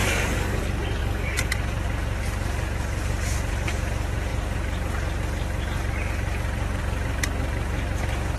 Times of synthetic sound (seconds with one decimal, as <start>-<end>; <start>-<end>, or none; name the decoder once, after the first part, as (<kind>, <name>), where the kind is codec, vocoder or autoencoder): 0.0-0.6 (codec, DAC); 1.0-1.5